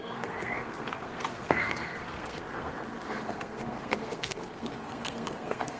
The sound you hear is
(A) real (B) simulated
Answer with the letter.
B